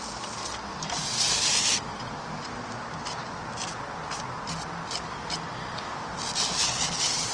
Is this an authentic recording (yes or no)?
yes